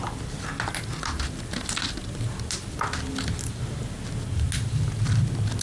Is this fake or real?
real